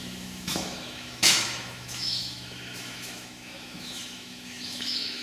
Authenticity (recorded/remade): remade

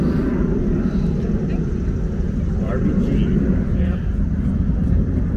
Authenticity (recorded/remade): recorded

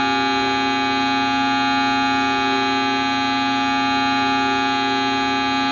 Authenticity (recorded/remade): recorded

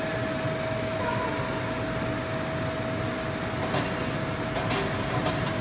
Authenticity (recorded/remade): recorded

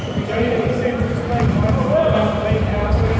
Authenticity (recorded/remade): recorded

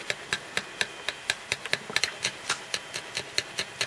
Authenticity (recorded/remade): recorded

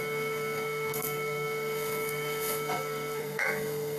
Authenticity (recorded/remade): remade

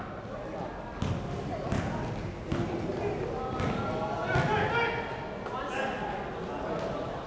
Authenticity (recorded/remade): recorded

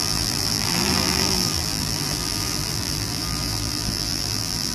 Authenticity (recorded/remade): remade